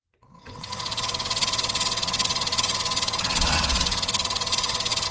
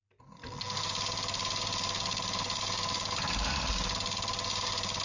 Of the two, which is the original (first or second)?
second